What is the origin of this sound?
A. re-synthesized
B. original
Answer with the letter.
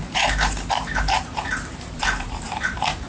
A